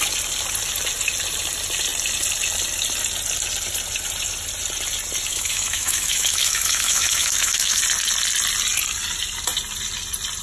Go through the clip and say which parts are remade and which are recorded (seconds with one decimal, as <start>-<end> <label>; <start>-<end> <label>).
0.0-5.3 recorded; 5.3-7.8 remade; 7.8-10.4 recorded